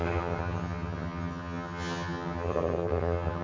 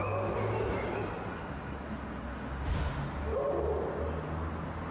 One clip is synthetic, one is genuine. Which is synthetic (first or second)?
first